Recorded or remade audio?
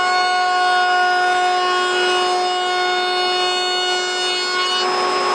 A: recorded